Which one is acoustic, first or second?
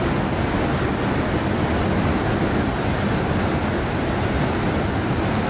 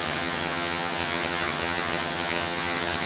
first